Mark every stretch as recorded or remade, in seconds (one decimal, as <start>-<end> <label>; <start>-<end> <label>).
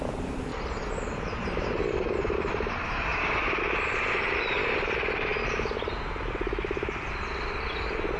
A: 0.0-0.5 remade; 0.5-2.5 recorded; 2.5-5.3 remade; 5.3-5.9 recorded; 5.9-8.2 remade